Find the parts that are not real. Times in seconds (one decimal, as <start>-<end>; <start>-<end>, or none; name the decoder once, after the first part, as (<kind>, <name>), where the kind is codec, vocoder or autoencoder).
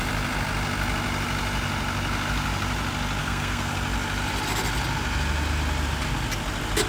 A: 3.2-3.7 (codec, SNAC)